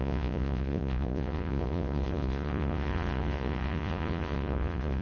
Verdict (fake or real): fake